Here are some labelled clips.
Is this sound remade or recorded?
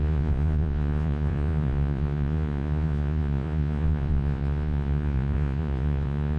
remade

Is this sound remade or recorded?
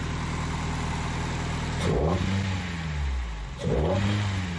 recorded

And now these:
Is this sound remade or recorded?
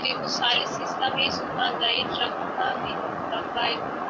remade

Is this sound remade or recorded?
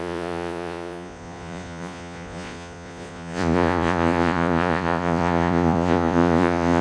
remade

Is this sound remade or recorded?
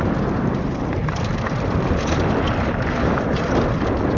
recorded